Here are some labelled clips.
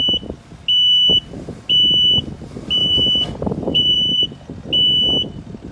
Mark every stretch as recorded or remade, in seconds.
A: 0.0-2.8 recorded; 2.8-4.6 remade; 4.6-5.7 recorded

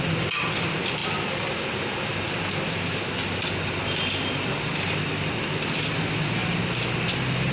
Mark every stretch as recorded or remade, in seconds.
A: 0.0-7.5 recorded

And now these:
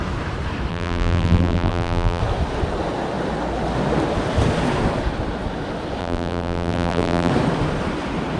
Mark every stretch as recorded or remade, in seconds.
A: 0.0-0.7 recorded; 0.7-2.2 remade; 2.2-6.0 recorded; 6.0-7.3 remade; 7.3-8.4 recorded

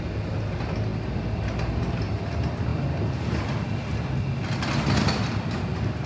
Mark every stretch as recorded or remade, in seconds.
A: 0.0-6.1 recorded

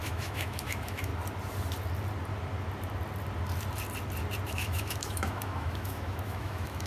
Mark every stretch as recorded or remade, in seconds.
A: 0.0-1.1 remade; 1.1-4.5 recorded; 4.5-6.9 remade